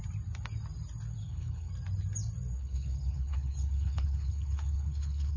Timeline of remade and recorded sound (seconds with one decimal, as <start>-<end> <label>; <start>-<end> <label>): 0.0-1.2 recorded; 1.2-1.7 remade; 1.7-2.6 recorded; 2.6-5.4 remade